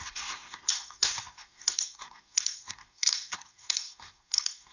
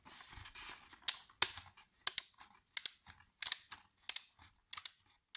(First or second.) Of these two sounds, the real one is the second